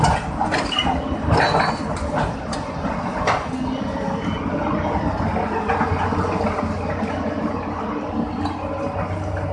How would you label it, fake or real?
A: real